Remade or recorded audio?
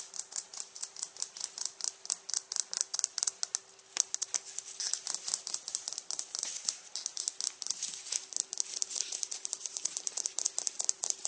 recorded